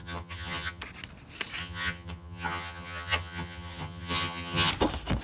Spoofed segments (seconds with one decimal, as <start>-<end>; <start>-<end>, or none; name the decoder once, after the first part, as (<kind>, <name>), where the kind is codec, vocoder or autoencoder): 0.0-0.8 (vocoder, HiFi-GAN); 1.6-4.7